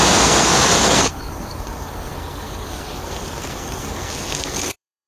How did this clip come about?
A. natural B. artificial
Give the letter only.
B